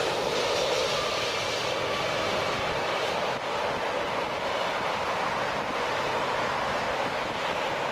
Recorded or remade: recorded